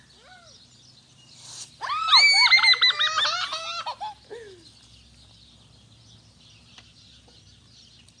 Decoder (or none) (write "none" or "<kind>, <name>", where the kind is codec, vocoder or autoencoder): none